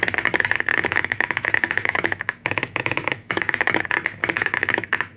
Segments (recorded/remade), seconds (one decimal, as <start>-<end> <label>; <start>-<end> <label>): 0.0-0.7 recorded; 0.7-3.8 remade; 3.8-4.2 recorded; 4.2-5.2 remade